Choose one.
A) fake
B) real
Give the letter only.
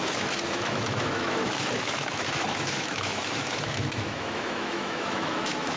A